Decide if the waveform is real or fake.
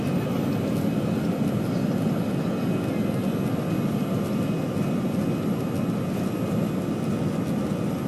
real